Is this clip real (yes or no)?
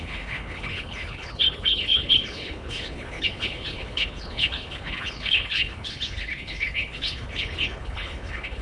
no